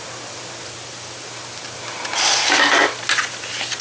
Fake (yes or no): no